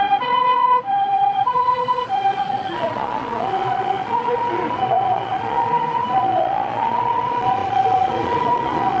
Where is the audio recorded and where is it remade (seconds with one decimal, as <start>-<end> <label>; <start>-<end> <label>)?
0.0-9.0 remade